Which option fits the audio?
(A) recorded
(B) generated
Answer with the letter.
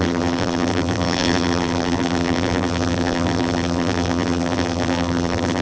B